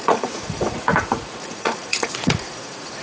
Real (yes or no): no